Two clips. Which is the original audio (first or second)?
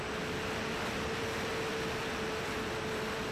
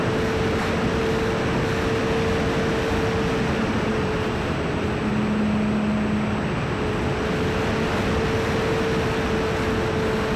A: second